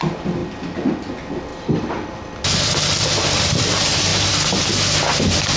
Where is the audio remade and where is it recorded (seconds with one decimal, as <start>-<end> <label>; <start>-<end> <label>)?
0.0-5.6 recorded